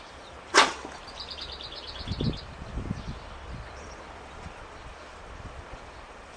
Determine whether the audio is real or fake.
fake